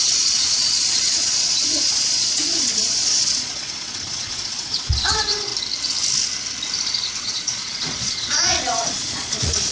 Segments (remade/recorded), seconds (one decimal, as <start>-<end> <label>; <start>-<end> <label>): 0.0-5.5 remade; 5.5-7.2 recorded; 7.2-9.7 remade